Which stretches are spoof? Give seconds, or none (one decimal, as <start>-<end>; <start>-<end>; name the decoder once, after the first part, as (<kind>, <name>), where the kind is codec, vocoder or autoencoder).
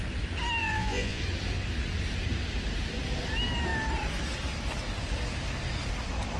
0.6-1.2 (vocoder, Vocos)